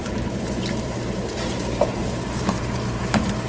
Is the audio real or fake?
fake